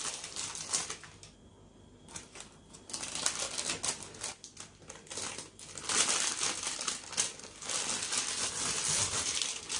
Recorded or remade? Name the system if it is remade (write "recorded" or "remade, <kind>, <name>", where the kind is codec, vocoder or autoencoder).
recorded